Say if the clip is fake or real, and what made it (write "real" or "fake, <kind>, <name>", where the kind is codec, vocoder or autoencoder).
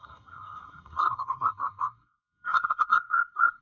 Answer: fake, codec, SNAC